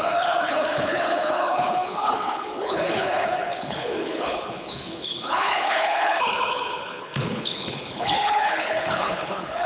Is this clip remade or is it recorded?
remade